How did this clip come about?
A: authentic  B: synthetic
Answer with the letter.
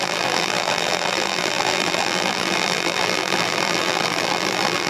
B